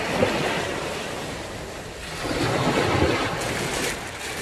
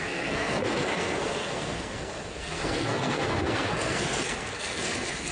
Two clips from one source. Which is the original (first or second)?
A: first